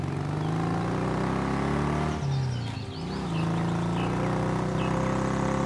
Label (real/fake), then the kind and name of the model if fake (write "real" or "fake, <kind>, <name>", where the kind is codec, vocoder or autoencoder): real